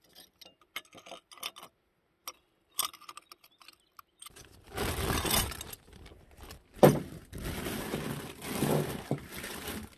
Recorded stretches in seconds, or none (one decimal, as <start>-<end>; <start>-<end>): 0.0-10.0